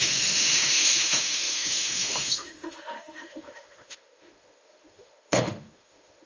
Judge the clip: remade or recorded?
remade